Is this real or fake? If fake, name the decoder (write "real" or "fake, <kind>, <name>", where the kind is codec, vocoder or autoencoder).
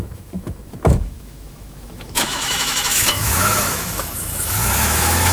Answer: fake, autoencoder, DAC-VAE